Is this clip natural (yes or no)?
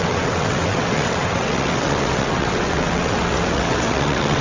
no